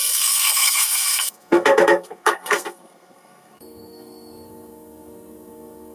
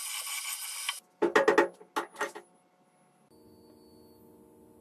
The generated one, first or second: first